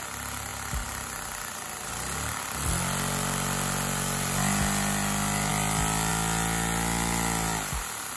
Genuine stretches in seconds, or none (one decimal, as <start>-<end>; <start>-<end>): 0.0-8.2